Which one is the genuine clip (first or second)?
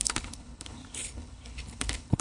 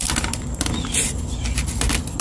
second